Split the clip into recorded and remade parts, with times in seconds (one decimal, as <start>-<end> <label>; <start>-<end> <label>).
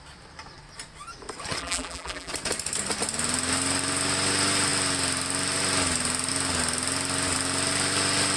0.0-1.6 recorded; 1.6-2.3 remade; 2.3-8.4 recorded